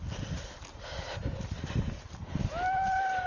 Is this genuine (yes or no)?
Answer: yes